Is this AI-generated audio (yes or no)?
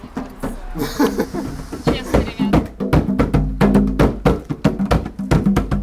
no